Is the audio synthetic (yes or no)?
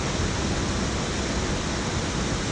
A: no